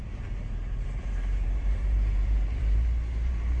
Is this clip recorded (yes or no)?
no